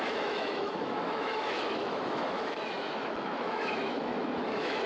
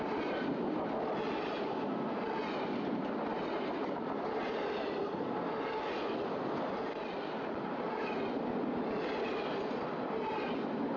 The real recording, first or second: second